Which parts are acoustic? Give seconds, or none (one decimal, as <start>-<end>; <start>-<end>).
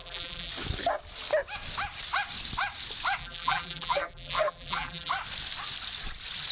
0.5-3.2; 5.1-6.5